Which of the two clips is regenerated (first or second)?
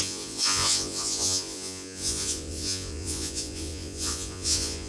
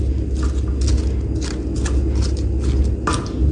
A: first